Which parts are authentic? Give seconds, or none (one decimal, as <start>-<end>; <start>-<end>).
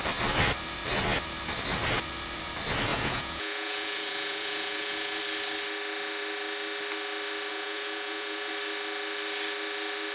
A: 0.0-2.9; 5.2-7.5; 8.5-10.1